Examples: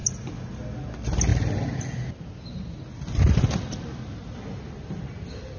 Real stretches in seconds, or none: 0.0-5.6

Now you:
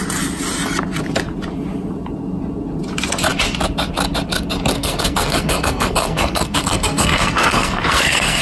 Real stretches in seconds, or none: 0.0-4.7

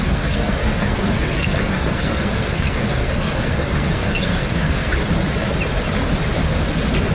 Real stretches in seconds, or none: 4.9-7.1

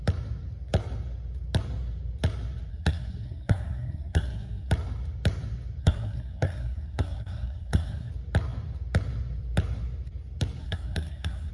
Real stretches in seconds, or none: 0.0-2.7; 4.7-5.8; 8.1-10.6

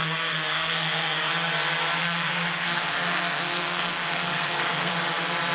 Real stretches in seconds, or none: 1.3-2.0; 4.9-5.5

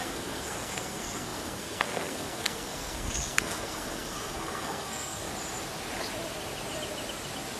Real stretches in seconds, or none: 5.3-7.6

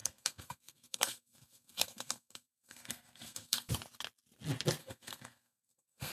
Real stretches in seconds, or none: 3.7-4.8

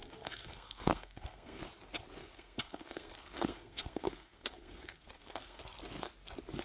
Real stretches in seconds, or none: 1.6-2.2; 5.6-6.6